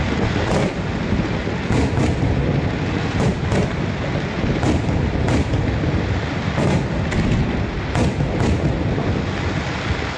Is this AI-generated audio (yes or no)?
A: no